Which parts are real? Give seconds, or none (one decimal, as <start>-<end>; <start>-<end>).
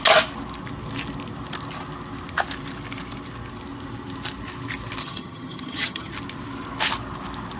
0.0-5.0; 6.1-7.6